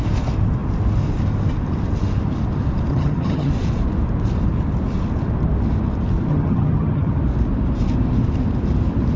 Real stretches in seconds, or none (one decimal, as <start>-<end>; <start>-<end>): 0.0-2.9; 3.5-6.3; 7.2-9.2

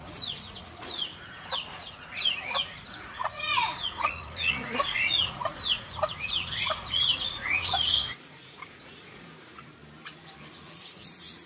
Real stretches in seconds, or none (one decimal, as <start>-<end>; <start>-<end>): 9.8-10.5

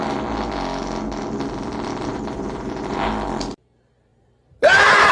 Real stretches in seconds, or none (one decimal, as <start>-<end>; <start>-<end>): 0.0-2.1; 3.1-4.1

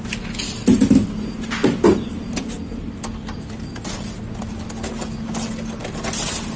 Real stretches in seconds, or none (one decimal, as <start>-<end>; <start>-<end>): 0.0-6.6

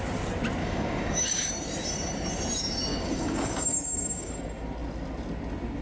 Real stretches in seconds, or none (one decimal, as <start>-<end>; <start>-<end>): 0.0-0.6; 1.5-2.9; 4.3-5.8

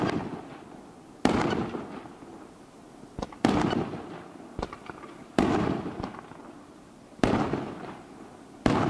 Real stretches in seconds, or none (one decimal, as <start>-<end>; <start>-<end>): 0.0-8.9

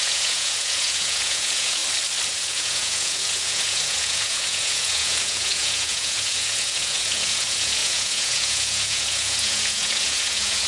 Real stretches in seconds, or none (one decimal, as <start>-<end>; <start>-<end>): 1.8-2.3

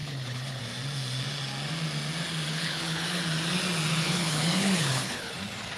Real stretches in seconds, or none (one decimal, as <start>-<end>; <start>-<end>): 0.6-2.5; 3.2-3.9; 5.3-5.8